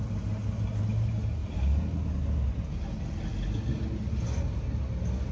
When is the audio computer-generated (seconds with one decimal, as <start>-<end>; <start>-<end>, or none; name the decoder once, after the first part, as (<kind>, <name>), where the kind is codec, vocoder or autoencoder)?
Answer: none